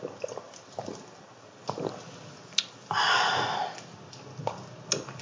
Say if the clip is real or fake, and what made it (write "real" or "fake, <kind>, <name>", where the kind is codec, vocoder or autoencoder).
real